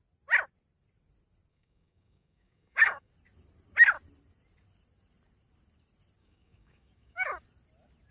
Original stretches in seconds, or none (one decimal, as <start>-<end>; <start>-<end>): 0.0-1.5; 3.1-6.2; 7.4-8.1